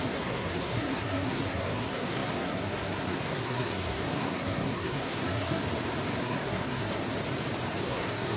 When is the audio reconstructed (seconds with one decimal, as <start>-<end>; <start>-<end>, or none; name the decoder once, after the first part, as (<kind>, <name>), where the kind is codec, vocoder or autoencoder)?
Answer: 0.0-5.6 (codec, SNAC); 6.2-7.1; 7.8-8.4